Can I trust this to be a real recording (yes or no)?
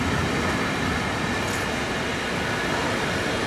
yes